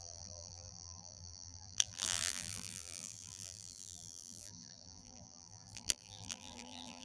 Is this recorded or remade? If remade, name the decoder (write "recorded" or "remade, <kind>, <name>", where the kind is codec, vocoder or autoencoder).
remade, vocoder, BigVGAN v2